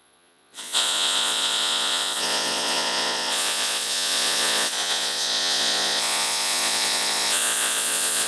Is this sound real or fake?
fake